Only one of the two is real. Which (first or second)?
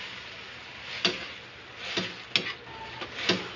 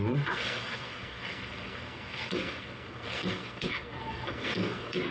first